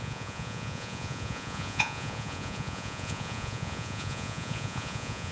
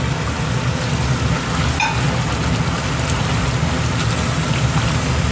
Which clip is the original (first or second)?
second